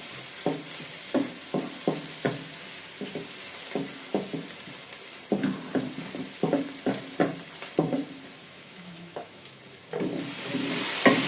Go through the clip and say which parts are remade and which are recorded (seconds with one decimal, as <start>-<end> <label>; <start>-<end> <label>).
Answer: 0.0-8.4 recorded; 8.4-9.6 remade; 9.6-11.3 recorded